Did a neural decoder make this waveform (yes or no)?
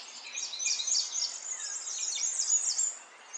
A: no